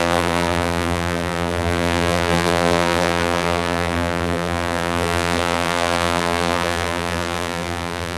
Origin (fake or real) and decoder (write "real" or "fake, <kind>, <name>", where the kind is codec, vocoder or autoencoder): fake, vocoder, BigVGAN v2